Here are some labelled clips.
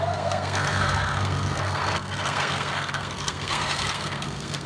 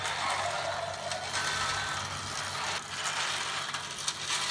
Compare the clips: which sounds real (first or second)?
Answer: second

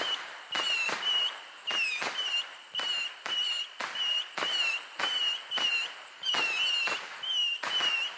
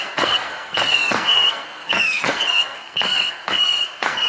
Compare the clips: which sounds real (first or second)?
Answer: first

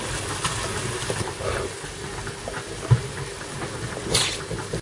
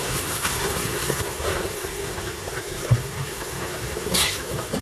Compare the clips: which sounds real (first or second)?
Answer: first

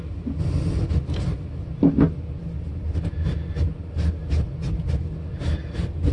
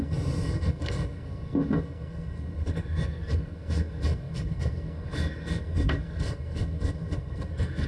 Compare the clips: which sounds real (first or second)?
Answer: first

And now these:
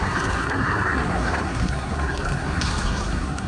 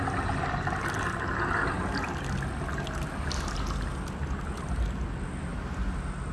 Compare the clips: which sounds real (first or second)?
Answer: second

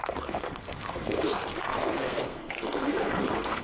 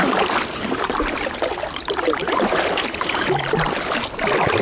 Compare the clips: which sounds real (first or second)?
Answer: second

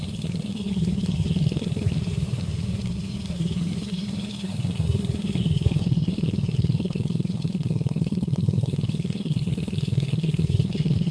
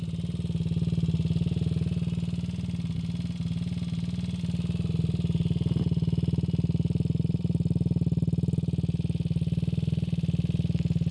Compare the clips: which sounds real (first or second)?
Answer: second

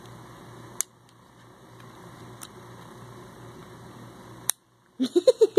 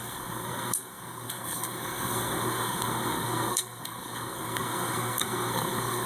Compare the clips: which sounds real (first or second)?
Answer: first